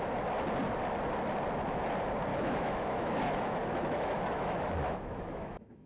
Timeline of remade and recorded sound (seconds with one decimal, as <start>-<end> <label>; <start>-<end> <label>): 0.0-2.3 recorded; 2.3-5.9 remade